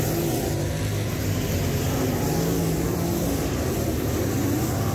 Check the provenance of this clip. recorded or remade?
recorded